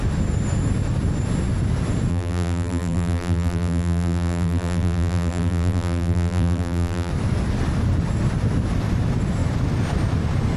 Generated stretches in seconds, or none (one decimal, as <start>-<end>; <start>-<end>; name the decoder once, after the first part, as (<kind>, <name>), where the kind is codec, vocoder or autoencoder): 2.1-7.1 (vocoder, BigVGAN v2)